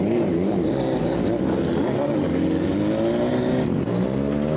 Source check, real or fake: real